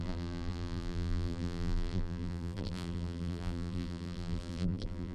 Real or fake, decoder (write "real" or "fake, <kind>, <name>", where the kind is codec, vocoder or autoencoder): fake, vocoder, BigVGAN v2